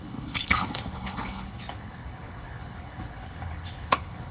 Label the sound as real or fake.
fake